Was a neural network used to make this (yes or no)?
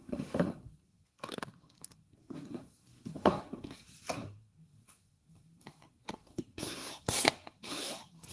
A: yes